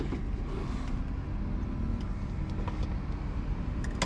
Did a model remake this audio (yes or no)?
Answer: no